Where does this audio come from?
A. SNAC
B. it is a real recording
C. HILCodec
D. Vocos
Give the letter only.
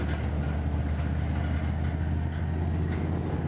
B